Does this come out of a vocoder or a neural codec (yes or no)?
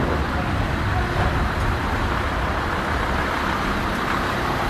no